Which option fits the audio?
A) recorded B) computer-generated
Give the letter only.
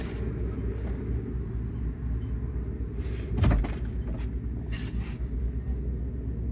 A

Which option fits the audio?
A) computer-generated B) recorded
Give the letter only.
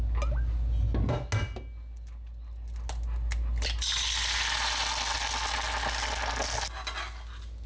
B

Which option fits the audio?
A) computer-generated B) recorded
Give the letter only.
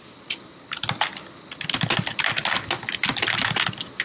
B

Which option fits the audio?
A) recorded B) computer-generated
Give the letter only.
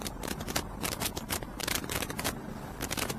B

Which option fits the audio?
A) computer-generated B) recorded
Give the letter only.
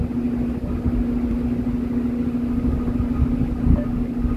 B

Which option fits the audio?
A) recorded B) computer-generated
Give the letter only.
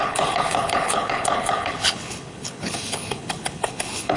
B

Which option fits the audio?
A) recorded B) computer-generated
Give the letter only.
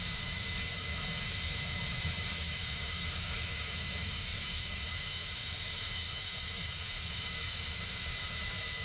B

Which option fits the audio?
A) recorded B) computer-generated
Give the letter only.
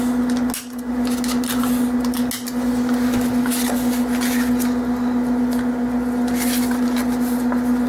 A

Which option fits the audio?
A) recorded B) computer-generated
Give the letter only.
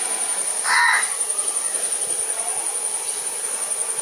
A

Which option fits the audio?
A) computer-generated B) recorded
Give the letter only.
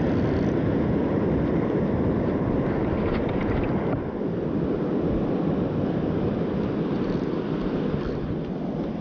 B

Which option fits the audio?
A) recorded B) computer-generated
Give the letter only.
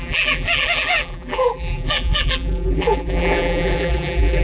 B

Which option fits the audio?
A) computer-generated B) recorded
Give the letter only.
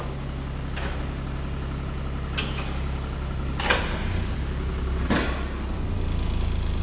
B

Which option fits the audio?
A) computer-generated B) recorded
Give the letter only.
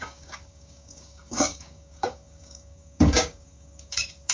A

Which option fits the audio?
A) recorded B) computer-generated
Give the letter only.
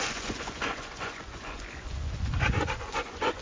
B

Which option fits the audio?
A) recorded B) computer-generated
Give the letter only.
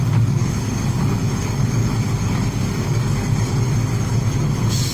B